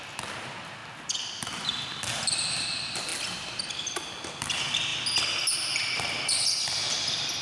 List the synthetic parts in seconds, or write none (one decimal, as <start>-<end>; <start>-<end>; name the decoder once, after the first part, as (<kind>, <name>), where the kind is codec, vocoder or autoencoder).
none